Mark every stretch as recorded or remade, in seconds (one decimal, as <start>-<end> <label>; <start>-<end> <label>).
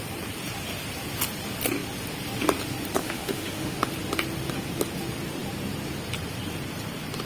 0.0-3.0 recorded; 3.0-3.9 remade; 3.9-7.3 recorded